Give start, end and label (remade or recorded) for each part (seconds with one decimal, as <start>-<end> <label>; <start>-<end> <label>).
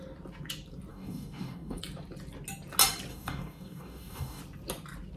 0.0-0.9 recorded; 0.9-1.8 remade; 1.8-3.1 recorded; 3.1-4.4 remade; 4.4-5.2 recorded